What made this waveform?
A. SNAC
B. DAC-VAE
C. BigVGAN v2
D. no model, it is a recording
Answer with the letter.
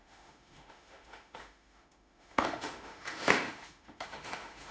B